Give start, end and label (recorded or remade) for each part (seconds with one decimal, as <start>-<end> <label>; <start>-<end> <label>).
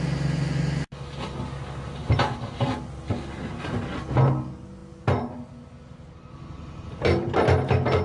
0.0-2.0 recorded; 2.0-2.7 remade; 2.7-8.0 recorded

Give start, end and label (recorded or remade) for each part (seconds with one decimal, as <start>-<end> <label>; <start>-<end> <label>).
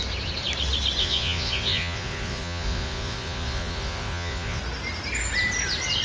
0.0-1.0 recorded; 1.0-4.6 remade; 4.6-6.0 recorded